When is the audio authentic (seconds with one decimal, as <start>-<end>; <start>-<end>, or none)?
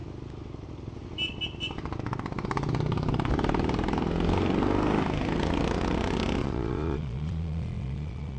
0.0-6.4